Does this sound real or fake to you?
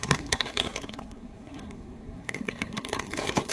fake